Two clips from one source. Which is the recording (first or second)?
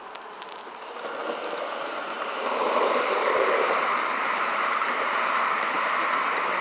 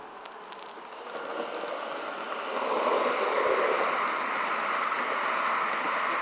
second